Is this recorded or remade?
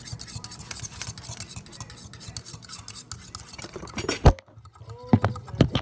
recorded